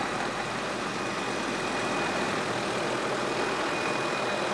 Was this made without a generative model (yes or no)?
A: yes